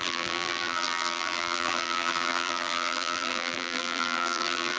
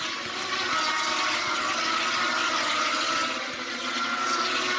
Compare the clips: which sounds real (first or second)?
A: second